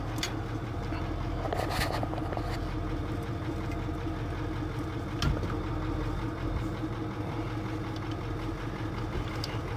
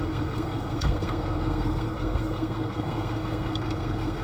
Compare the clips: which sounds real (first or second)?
first